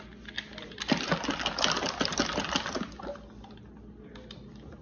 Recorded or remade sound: recorded